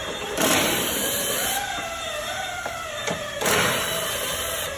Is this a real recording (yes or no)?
no